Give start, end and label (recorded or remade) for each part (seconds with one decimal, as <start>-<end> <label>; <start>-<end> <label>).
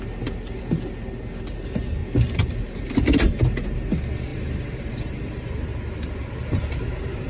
0.0-2.0 recorded; 2.0-3.4 remade; 3.4-4.3 recorded; 4.3-7.3 remade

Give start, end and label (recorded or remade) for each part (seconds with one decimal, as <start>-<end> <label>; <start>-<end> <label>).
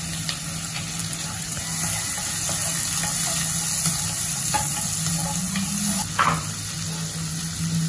0.0-1.0 recorded; 1.0-1.6 remade; 1.6-7.9 recorded